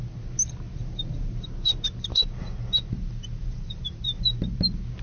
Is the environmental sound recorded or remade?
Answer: recorded